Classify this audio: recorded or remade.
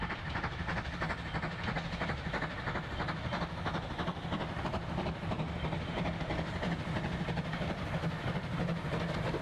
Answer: recorded